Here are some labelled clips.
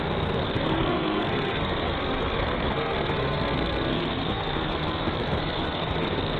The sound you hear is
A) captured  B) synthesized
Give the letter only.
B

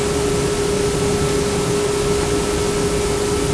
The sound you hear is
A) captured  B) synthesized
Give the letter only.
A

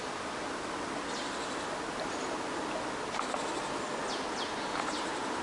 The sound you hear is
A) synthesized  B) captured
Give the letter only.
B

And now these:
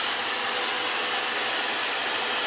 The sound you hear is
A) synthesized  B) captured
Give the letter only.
B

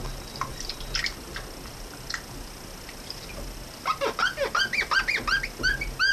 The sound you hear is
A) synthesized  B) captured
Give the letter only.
B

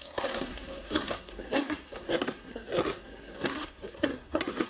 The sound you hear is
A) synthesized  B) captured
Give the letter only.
A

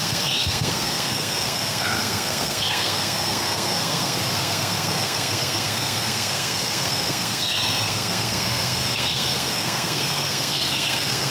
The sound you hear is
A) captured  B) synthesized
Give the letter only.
B